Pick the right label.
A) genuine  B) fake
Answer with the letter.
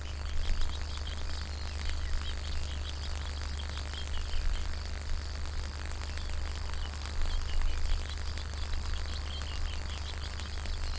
A